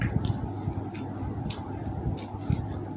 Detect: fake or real real